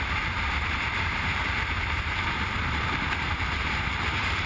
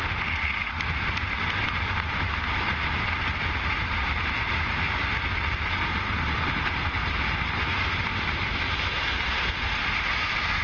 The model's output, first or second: first